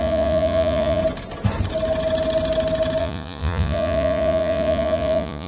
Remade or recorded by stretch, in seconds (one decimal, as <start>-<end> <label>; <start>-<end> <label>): 0.0-1.0 remade; 1.0-3.0 recorded; 3.0-5.5 remade